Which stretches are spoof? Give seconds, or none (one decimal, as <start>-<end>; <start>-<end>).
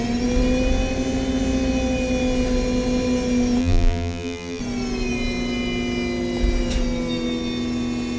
3.6-4.6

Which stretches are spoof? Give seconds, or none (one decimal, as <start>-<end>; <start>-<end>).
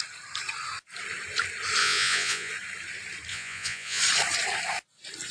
1.8-2.5; 3.3-4.0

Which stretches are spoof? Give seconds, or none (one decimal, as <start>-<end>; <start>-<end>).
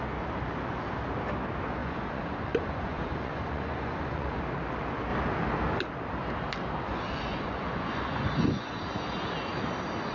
1.8-4.4; 6.9-8.8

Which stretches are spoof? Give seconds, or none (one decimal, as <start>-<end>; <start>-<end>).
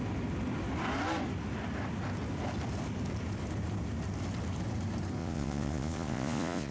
5.2-6.7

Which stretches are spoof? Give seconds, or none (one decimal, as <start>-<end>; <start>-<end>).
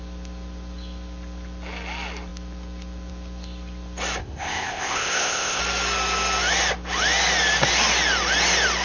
4.2-5.6